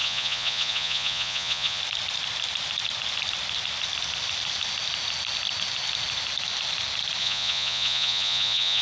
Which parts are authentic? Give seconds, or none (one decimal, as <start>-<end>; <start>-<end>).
1.8-7.2